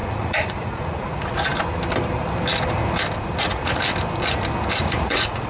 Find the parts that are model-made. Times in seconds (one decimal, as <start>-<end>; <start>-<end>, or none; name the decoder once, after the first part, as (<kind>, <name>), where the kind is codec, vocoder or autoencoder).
0.0-1.5 (vocoder, Vocos); 3.4-3.8; 4.8-5.5

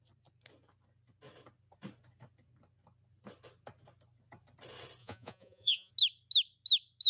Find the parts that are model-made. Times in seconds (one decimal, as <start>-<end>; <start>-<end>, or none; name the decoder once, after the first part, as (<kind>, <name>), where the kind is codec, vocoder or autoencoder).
5.0-5.9 (vocoder, Vocos)

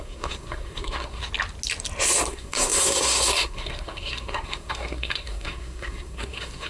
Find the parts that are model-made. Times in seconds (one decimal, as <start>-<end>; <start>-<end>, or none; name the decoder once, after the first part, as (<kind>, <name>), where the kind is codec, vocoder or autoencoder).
0.0-1.2 (codec, SNAC); 2.3-6.7